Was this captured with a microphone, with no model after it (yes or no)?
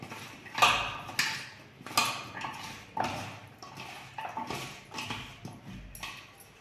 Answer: yes